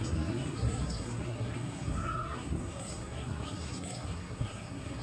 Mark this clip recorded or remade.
remade